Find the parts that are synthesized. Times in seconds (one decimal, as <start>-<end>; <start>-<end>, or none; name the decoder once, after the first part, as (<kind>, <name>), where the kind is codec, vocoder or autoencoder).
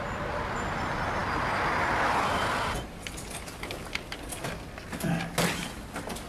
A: none